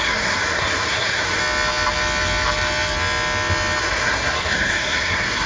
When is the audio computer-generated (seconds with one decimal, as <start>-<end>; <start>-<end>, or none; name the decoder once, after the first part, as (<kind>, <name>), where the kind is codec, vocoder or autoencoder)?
0.0-1.4 (codec, SNAC); 3.8-5.5